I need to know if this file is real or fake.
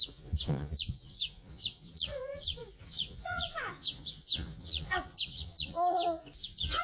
fake